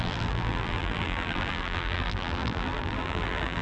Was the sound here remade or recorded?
remade